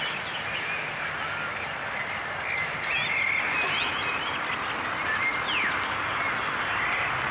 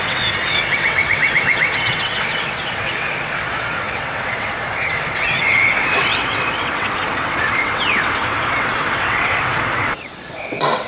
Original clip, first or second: first